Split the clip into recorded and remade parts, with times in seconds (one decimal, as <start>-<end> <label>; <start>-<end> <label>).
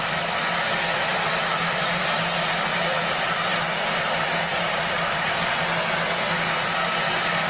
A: 0.0-1.1 recorded; 1.1-2.0 remade; 2.0-2.7 recorded; 2.7-3.3 remade; 3.3-7.5 recorded